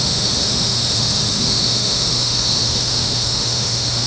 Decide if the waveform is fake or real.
fake